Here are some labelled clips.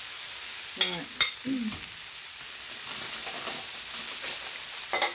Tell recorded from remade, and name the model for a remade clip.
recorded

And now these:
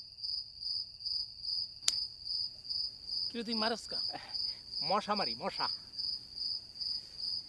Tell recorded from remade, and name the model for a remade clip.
recorded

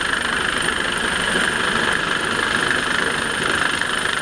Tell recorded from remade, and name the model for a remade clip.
recorded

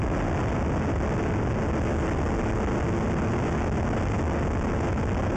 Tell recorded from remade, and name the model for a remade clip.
recorded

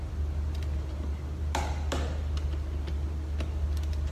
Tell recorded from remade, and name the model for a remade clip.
recorded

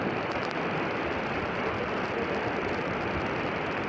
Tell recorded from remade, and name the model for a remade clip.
recorded